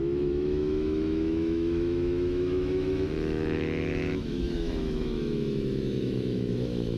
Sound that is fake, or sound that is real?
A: fake